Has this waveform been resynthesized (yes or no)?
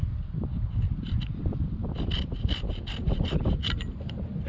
no